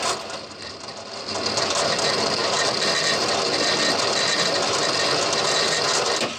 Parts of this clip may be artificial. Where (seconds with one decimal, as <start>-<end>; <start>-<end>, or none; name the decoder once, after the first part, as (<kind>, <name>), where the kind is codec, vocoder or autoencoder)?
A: 2.4-3.4 (vocoder, BigVGAN v2); 4.3-4.8